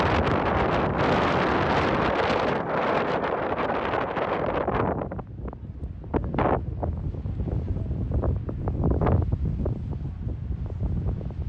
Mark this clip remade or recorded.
recorded